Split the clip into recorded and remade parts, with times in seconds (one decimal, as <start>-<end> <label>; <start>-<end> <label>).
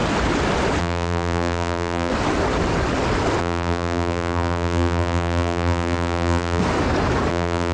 0.0-0.8 recorded; 0.8-2.1 remade; 2.1-3.4 recorded; 3.4-6.6 remade; 6.6-7.3 recorded; 7.3-7.7 remade